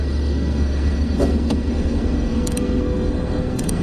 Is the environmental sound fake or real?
fake